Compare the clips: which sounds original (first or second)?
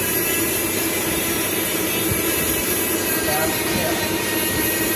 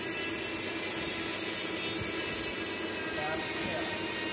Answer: second